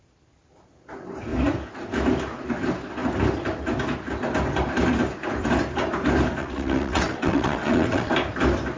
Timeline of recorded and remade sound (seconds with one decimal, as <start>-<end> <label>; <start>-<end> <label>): 0.0-6.4 recorded; 6.4-8.1 remade; 8.1-8.8 recorded